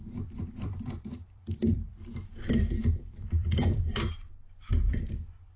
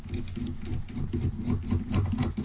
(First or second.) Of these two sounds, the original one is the second